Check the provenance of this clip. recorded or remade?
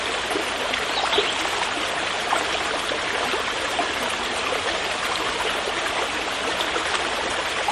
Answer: recorded